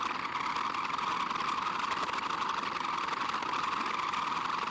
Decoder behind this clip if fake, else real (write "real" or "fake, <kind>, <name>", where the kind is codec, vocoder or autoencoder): real